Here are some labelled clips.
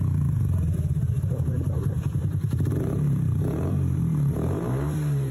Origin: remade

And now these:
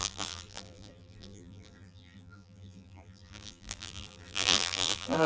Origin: remade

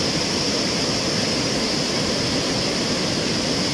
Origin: recorded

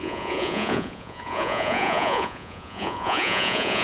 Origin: remade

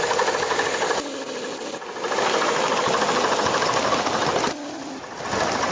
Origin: recorded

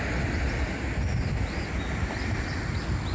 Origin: recorded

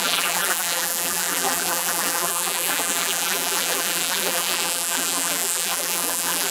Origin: remade